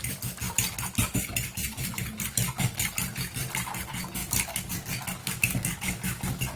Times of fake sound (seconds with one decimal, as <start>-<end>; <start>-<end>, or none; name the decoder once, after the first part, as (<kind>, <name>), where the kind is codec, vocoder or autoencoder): 5.2-6.6 (codec, DAC)